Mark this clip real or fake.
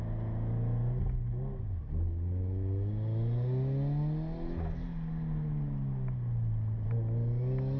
real